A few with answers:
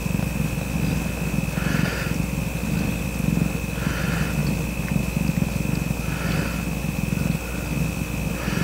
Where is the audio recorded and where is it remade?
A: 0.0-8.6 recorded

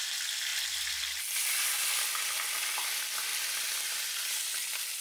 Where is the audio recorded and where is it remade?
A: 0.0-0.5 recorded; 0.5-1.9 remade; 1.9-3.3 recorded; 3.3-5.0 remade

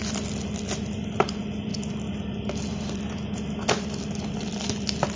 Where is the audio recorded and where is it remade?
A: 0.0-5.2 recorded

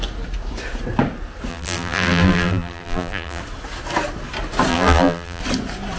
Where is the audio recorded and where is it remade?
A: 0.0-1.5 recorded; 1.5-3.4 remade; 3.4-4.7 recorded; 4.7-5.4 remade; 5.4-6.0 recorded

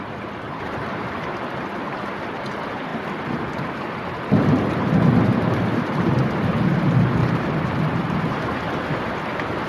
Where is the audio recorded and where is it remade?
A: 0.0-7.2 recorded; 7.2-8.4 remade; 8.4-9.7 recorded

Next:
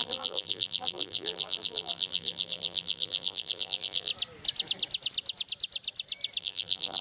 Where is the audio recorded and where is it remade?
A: 0.0-4.1 remade; 4.1-6.4 recorded; 6.4-7.0 remade

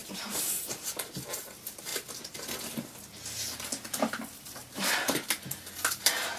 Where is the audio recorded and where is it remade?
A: 0.0-0.9 remade; 0.9-6.4 recorded

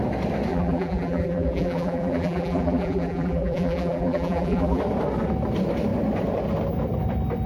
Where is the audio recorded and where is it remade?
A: 0.0-0.5 recorded; 0.5-4.8 remade; 4.8-7.5 recorded